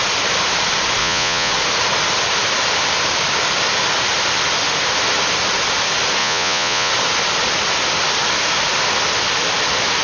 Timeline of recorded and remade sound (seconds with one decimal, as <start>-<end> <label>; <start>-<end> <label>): 0.0-1.0 recorded; 1.0-1.5 remade; 1.5-6.2 recorded; 6.2-6.9 remade; 6.9-10.0 recorded